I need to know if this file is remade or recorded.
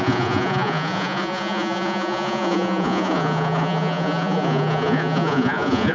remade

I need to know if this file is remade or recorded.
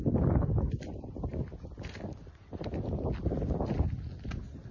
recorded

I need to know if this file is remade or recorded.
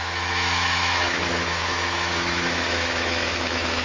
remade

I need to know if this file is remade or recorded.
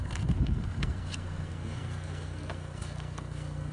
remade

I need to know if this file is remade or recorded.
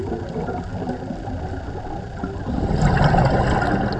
recorded